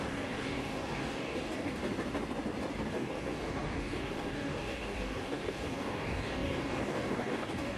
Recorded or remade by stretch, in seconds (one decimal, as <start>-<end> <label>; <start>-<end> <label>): 0.0-1.8 remade; 1.8-2.9 recorded; 2.9-7.8 remade